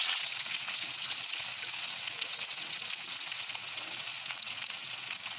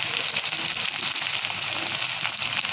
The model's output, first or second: first